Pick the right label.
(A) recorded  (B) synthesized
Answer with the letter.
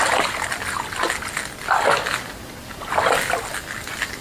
A